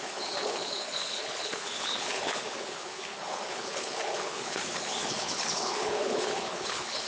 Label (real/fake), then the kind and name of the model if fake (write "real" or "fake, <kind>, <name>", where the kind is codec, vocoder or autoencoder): fake, codec, HILCodec